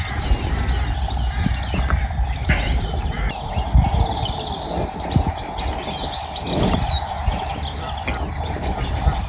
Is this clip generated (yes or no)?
no